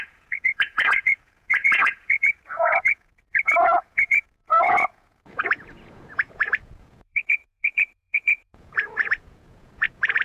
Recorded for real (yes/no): no